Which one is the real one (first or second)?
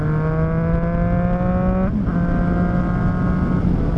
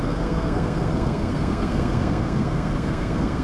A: first